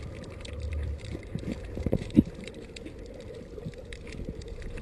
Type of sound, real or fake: fake